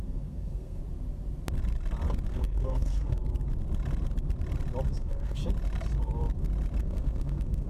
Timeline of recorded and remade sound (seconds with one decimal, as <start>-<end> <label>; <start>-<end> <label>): 0.0-0.8 remade; 0.8-2.3 recorded; 2.3-3.2 remade; 3.2-4.9 recorded; 4.9-5.4 remade; 5.4-6.8 recorded; 6.8-7.7 remade